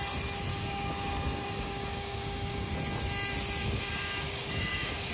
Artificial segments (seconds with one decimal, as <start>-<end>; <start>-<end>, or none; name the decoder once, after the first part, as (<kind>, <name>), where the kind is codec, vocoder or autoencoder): 0.5-2.7 (codec, DAC); 3.6-5.1